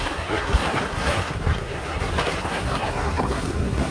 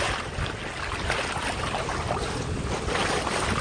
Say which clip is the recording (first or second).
second